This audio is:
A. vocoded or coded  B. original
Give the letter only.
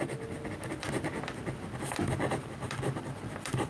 B